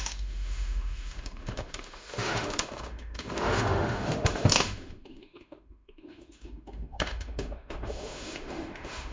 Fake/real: fake